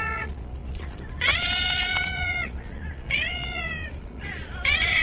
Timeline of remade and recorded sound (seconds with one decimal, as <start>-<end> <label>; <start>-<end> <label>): 0.0-5.0 remade

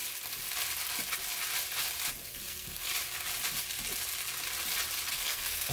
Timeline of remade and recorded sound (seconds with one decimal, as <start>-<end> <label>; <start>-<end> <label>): 0.0-2.1 recorded; 2.1-2.9 remade; 2.9-5.1 recorded; 5.1-5.7 remade

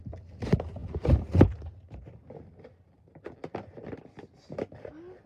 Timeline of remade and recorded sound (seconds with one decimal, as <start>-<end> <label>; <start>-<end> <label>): 0.0-5.3 recorded

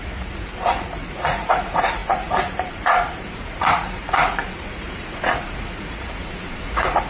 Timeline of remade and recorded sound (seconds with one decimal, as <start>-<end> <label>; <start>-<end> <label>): 0.0-7.1 remade

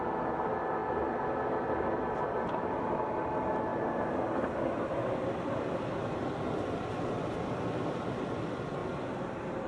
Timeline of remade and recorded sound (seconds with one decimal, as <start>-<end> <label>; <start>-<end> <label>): 0.0-9.7 recorded

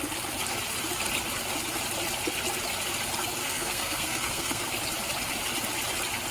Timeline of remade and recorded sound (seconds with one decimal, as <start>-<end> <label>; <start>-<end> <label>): 0.0-3.4 recorded; 3.4-4.6 remade; 4.6-6.3 recorded